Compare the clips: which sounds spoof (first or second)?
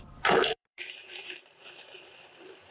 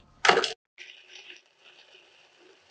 first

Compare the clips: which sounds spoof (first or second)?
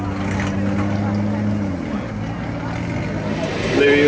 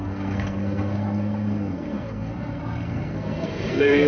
second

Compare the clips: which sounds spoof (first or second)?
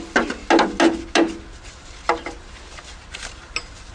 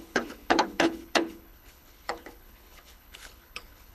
second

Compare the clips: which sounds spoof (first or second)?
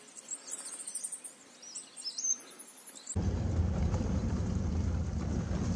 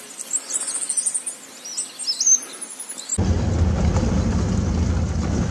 first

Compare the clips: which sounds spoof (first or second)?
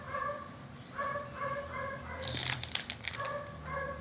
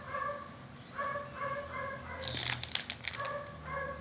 first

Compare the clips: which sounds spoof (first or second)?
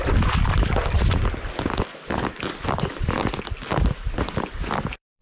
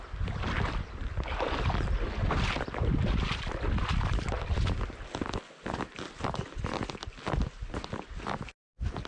first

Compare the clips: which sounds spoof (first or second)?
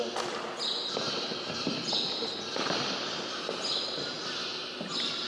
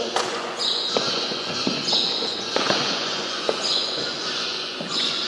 second